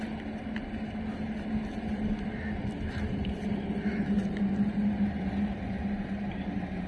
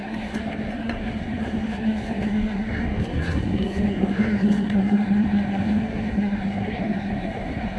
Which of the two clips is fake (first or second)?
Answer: second